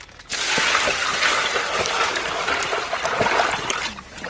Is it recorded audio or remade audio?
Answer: recorded